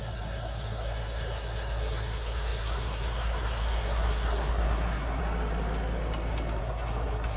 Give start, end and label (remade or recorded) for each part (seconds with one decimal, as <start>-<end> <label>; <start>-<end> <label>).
0.0-5.2 remade; 5.2-6.6 recorded; 6.6-7.4 remade